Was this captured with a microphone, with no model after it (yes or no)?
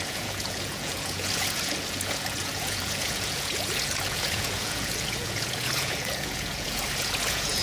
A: no